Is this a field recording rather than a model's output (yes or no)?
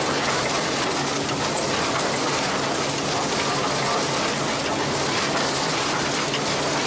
yes